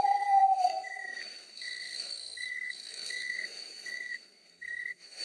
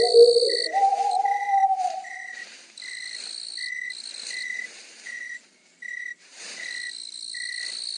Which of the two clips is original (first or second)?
second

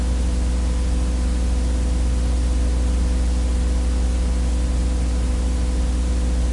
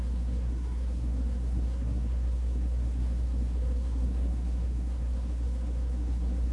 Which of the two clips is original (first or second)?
first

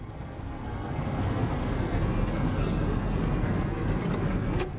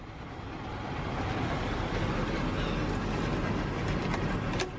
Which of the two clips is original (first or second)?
second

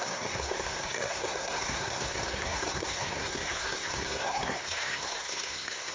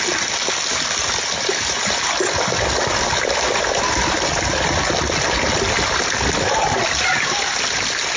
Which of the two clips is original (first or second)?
second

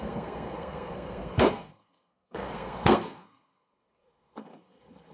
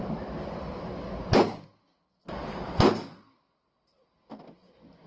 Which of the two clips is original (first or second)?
second